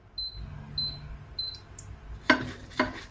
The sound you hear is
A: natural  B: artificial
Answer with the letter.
A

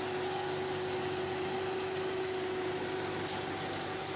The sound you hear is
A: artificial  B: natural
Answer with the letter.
B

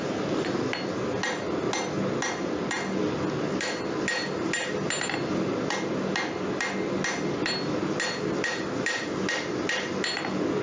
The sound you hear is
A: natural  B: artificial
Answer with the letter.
A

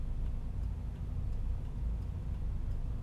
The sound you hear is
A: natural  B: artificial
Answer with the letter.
A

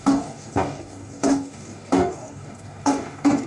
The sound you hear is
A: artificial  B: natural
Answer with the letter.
A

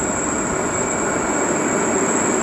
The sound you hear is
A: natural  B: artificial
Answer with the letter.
A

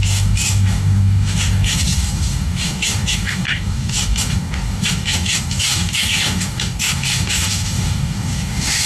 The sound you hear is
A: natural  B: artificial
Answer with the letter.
B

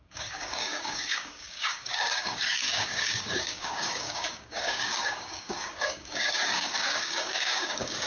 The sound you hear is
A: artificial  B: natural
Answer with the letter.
A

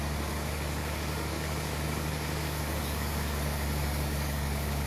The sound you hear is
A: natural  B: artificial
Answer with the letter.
B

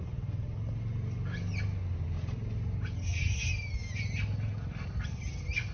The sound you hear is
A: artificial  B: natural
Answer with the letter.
B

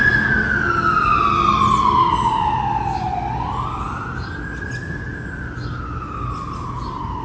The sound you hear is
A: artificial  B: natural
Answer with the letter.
B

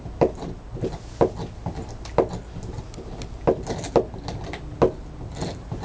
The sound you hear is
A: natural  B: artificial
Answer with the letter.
A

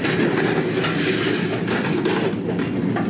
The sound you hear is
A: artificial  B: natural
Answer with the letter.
B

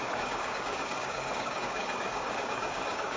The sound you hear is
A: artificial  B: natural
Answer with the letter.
A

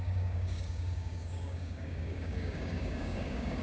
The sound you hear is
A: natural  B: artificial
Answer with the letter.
B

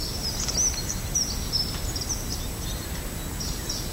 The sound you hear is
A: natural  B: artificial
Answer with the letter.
A